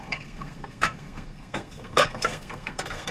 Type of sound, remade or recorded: remade